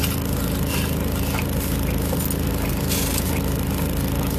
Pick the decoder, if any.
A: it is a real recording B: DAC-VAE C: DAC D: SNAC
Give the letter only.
A